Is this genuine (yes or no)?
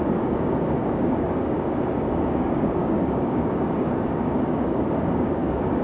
no